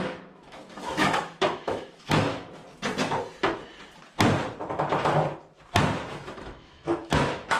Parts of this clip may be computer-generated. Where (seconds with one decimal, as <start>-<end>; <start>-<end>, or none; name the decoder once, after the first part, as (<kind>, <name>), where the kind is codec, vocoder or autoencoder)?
0.0-2.6 (autoencoder, DAC-VAE); 6.1-7.6